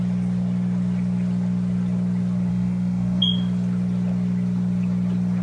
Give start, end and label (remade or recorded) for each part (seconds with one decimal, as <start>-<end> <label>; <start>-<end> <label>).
0.0-2.5 recorded; 2.5-3.2 remade; 3.2-5.4 recorded

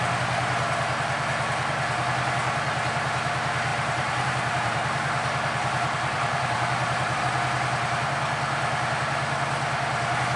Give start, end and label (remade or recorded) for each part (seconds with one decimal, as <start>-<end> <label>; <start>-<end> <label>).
0.0-3.7 recorded; 3.7-7.2 remade; 7.2-10.4 recorded

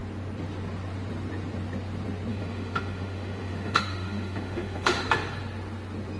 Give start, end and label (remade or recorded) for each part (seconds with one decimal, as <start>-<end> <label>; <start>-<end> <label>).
0.0-2.3 recorded; 2.3-5.0 remade; 5.0-6.2 recorded

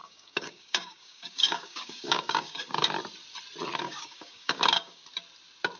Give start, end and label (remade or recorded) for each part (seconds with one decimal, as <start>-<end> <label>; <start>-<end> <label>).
0.0-2.8 remade; 2.8-3.8 recorded; 3.8-5.0 remade; 5.0-5.8 recorded

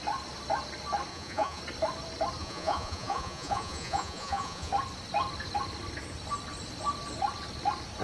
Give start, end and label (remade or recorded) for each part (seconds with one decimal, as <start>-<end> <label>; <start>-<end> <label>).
0.0-1.1 recorded; 1.1-1.6 remade; 1.6-2.4 recorded; 2.4-4.7 remade; 4.7-8.0 recorded

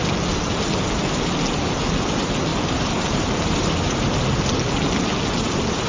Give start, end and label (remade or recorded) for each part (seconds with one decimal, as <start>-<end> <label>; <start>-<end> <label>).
0.0-2.5 recorded; 2.5-4.5 remade; 4.5-5.9 recorded